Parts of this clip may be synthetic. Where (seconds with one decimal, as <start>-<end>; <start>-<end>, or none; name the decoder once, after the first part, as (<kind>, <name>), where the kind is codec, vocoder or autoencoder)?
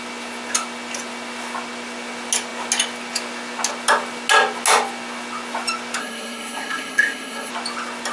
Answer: 6.0-7.5 (codec, SNAC)